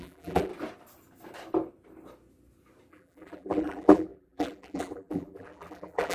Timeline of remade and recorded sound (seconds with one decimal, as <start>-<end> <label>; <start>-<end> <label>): 0.0-0.5 remade; 0.5-2.9 recorded; 2.9-6.1 remade